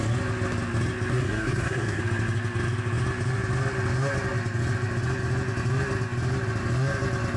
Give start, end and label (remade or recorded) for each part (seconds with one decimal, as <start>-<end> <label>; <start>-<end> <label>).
0.0-1.1 recorded; 1.1-2.0 remade; 2.0-7.4 recorded